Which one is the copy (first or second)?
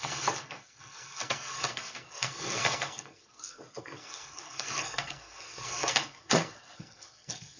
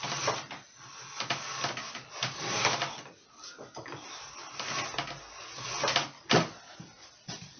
first